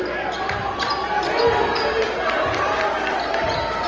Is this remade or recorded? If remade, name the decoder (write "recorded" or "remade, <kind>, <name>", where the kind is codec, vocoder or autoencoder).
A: recorded